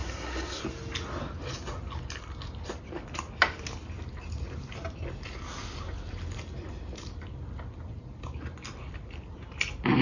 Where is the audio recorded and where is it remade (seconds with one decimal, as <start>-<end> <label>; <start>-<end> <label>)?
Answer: 0.0-0.6 remade; 0.6-10.0 recorded